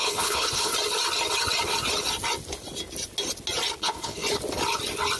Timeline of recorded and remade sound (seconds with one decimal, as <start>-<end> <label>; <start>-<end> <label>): 0.0-0.7 remade; 0.7-3.8 recorded; 3.8-4.2 remade; 4.2-5.2 recorded